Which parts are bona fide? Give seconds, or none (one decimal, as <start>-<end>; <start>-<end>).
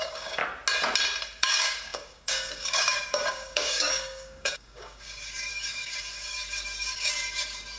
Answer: 0.4-1.4